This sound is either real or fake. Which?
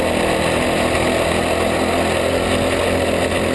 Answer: real